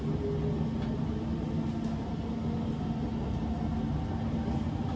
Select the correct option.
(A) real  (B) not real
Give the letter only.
A